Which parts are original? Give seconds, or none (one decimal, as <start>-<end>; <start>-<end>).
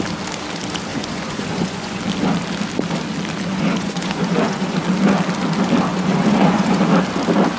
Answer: 0.0-0.9; 2.0-3.5; 4.8-5.9; 6.8-7.6